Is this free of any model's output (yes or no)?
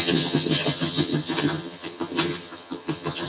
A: no